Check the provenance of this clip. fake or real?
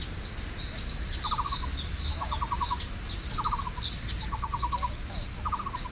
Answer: real